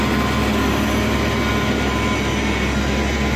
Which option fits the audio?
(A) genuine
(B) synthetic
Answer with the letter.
A